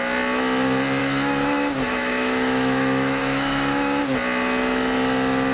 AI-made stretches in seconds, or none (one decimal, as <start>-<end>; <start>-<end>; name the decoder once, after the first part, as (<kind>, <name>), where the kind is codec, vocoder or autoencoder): 1.0-4.0 (autoencoder, DAC-VAE)